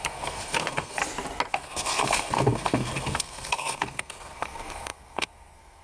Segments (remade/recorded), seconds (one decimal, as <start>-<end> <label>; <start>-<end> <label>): 0.0-1.0 remade; 1.0-1.5 recorded; 1.5-5.8 remade